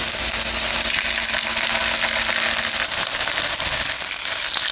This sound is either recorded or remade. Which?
recorded